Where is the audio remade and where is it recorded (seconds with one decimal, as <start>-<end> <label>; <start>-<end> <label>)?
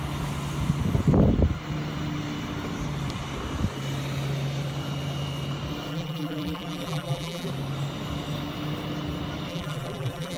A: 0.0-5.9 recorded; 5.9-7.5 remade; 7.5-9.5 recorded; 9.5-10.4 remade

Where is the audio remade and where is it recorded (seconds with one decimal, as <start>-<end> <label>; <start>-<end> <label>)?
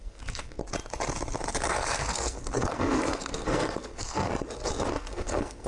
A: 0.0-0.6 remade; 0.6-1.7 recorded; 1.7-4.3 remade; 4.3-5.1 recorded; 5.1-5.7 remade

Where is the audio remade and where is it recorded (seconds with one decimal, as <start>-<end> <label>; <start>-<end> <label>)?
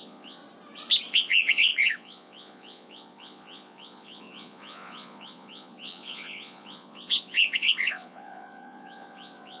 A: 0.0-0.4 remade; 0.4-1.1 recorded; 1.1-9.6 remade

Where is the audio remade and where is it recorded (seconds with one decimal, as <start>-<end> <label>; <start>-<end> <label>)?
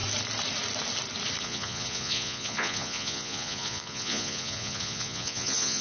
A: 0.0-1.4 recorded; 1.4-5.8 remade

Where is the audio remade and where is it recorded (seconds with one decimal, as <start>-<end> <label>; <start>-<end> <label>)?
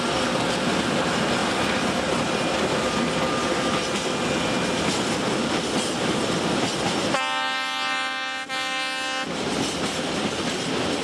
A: 0.0-11.0 recorded